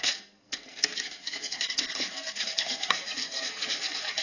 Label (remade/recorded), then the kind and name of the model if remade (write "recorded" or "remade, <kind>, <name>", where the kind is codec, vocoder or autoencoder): remade, codec, SNAC